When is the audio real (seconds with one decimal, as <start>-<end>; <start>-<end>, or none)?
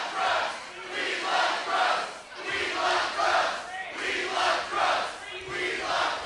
0.0-1.6; 2.7-6.3